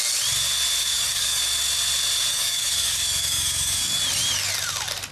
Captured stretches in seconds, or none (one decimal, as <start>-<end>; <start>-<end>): 0.0-0.8; 1.4-2.3; 4.0-5.1